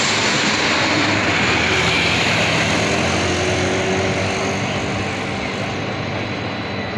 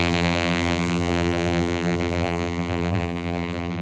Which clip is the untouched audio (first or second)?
first